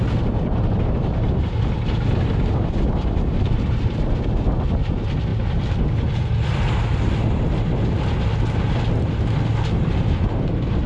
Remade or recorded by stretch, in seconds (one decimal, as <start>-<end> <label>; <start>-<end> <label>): 0.0-10.9 recorded